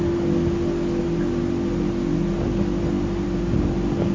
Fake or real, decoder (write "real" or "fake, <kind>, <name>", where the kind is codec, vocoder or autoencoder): real